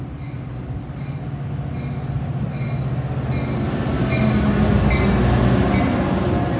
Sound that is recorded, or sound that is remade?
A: recorded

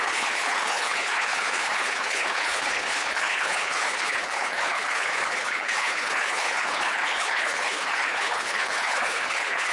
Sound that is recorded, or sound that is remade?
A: remade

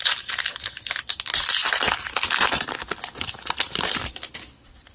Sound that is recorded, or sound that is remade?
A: recorded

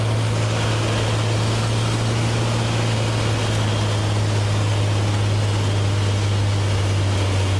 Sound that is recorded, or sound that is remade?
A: recorded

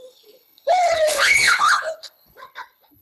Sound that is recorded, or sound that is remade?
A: remade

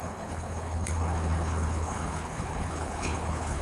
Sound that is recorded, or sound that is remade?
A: remade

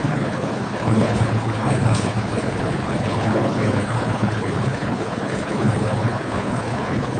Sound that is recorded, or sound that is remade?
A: remade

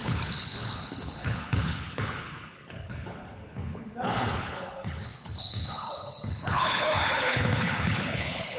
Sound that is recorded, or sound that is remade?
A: remade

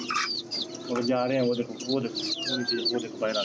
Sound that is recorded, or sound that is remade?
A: recorded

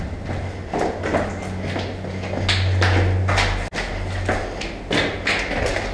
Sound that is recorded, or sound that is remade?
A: recorded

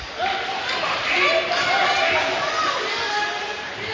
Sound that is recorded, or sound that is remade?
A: recorded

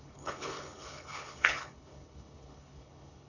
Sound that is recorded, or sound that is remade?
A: remade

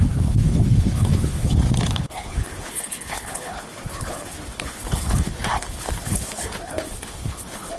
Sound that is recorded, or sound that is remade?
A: remade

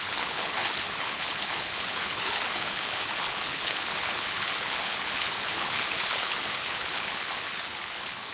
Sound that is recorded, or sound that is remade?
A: remade